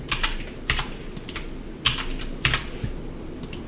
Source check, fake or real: real